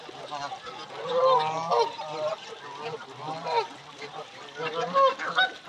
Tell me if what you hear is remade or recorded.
recorded